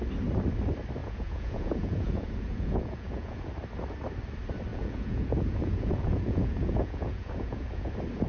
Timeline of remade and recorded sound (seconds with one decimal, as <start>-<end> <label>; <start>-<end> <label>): 0.0-1.0 recorded; 1.0-3.5 remade; 3.5-4.7 recorded; 4.7-7.9 remade; 7.9-8.3 recorded